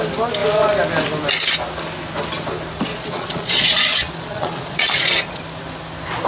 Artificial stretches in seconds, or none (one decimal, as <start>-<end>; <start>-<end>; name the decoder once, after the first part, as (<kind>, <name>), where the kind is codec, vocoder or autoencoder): 2.9-5.4 (vocoder, Vocos)